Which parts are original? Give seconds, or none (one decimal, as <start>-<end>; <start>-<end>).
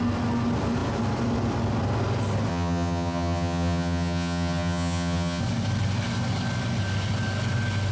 0.0-2.5; 5.4-7.9